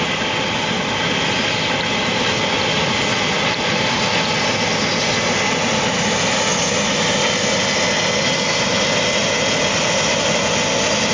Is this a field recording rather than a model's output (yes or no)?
yes